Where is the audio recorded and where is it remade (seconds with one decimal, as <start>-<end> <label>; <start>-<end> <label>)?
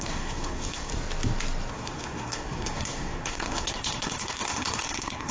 0.0-0.9 remade; 0.9-1.7 recorded; 1.7-5.3 remade